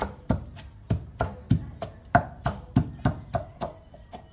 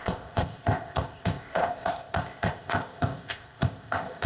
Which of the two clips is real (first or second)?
first